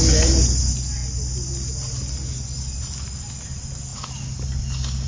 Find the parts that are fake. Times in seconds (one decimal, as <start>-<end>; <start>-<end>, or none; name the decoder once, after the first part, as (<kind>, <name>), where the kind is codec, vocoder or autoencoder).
none